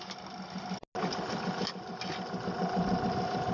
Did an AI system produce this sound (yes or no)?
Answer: no